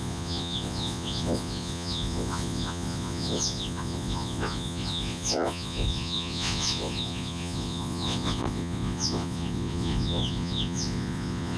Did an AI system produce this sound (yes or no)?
yes